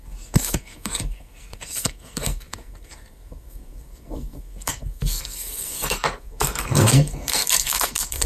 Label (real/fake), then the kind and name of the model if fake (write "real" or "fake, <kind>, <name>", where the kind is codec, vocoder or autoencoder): fake, codec, SNAC